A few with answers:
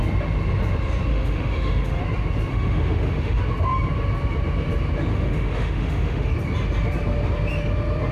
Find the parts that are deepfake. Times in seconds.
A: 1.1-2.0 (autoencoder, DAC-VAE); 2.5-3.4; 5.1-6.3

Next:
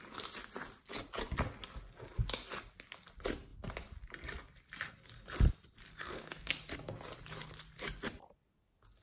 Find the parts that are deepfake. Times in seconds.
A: 5.9-6.5 (codec, SNAC)

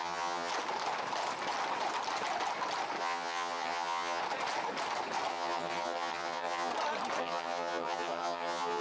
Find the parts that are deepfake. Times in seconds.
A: 0.0-0.5 (vocoder, HiFi-GAN); 3.0-4.2; 5.3-6.7; 7.2-8.8

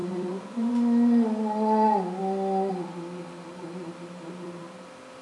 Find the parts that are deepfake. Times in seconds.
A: 0.0-0.7 (vocoder, BigVGAN v2); 3.5-4.6